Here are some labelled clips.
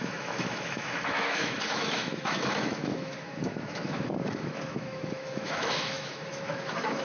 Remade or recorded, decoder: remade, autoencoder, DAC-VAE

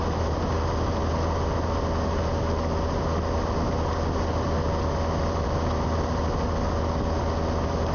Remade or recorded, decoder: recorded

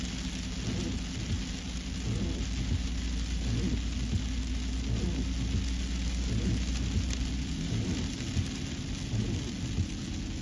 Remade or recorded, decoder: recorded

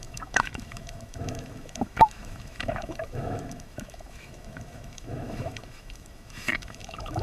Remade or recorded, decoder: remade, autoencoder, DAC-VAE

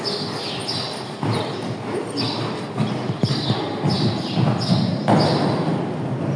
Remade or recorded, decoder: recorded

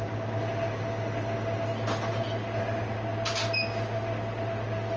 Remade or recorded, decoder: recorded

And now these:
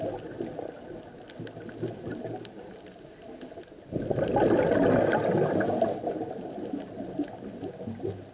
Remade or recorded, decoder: recorded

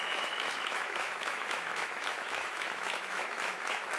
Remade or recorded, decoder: remade, autoencoder, DAC-VAE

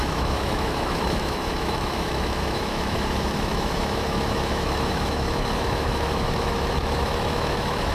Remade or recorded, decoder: remade, autoencoder, DAC-VAE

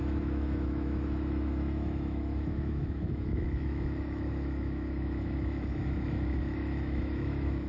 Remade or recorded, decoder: remade, autoencoder, DAC-VAE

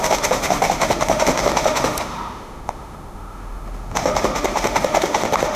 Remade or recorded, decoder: remade, autoencoder, DAC-VAE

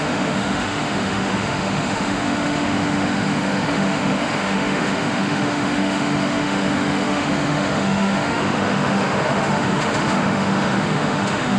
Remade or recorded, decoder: remade, autoencoder, DAC-VAE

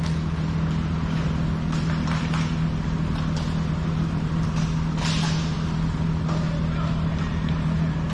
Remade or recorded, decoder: recorded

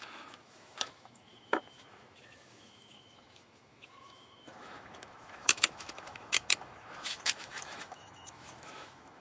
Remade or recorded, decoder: remade, autoencoder, DAC-VAE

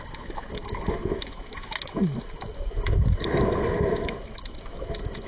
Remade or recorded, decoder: remade, autoencoder, DAC-VAE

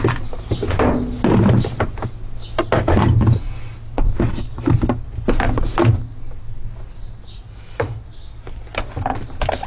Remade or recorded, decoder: recorded